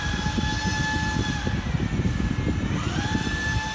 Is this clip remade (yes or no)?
no